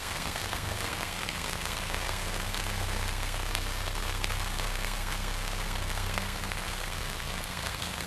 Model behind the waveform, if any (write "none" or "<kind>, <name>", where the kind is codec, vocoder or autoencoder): codec, SNAC